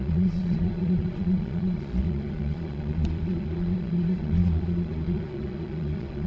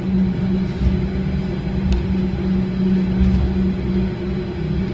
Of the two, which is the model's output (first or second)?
first